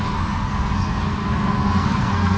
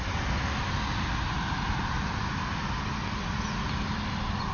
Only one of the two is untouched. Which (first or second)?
second